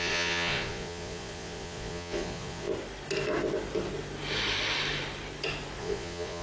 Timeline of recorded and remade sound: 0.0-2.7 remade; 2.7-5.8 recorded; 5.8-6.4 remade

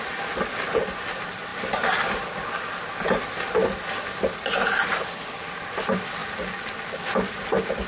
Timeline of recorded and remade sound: 0.0-7.9 recorded

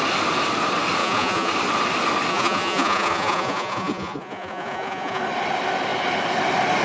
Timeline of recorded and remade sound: 0.0-1.0 recorded; 1.0-1.5 remade; 1.5-2.3 recorded; 2.3-5.2 remade; 5.2-6.8 recorded

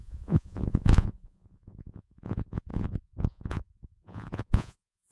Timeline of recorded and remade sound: 0.0-5.1 remade

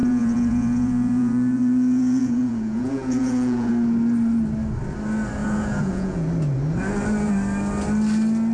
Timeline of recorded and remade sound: 0.0-3.7 remade; 3.7-5.4 recorded; 5.4-6.3 remade; 6.3-8.5 recorded